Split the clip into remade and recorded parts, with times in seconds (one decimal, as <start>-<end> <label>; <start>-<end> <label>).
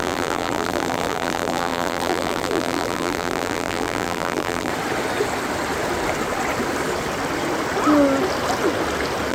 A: 0.0-4.7 remade; 4.7-9.3 recorded